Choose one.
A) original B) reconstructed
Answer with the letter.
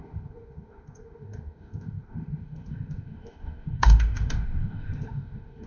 B